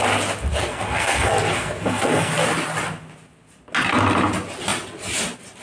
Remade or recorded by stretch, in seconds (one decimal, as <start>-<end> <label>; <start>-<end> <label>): 0.0-0.6 recorded; 0.6-2.3 remade; 2.3-5.6 recorded